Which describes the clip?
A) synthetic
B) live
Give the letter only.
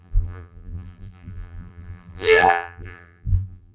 A